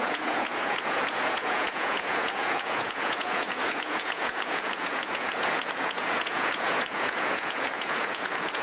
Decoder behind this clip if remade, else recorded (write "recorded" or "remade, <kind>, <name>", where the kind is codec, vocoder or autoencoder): remade, vocoder, Vocos